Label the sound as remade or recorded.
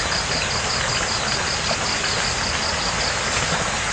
recorded